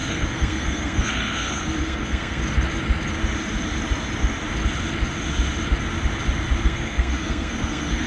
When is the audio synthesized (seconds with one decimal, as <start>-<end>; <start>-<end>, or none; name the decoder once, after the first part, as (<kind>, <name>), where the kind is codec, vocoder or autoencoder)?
0.0-2.4 (codec, SNAC); 6.6-8.1